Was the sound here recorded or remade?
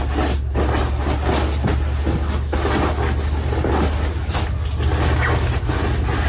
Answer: recorded